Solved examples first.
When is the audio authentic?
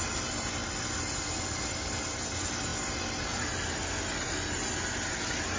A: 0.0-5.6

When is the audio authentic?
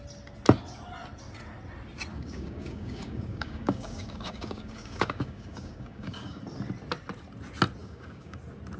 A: 0.0-2.1; 6.4-7.8; 8.4-8.8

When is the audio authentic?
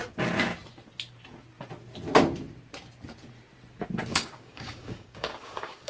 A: 0.0-4.1